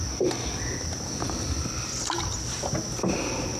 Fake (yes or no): no